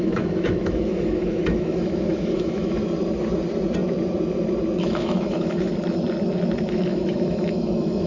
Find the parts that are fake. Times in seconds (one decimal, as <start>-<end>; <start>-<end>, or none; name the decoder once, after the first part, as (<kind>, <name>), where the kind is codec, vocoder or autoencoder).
0.0-2.8 (autoencoder, DAC-VAE); 4.8-5.7; 6.7-8.1